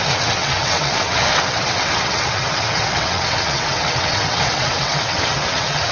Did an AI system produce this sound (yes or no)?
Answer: yes